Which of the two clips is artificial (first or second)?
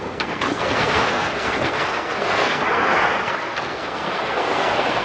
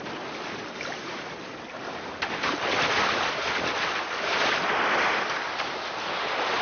first